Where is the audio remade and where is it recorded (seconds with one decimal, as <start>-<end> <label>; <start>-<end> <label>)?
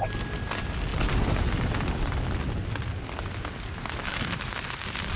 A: 0.0-0.9 recorded; 0.9-2.9 remade; 2.9-5.2 recorded